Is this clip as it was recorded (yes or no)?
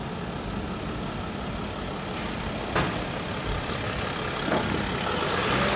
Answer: yes